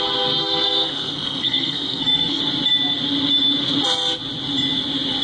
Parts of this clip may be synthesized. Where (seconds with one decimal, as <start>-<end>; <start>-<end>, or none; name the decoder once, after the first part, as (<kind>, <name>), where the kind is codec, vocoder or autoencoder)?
0.4-2.4 (codec, SNAC)